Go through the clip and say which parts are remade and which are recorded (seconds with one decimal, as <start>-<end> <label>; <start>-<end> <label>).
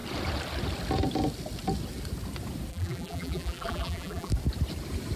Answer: 0.0-2.7 recorded; 2.7-4.3 remade; 4.3-5.2 recorded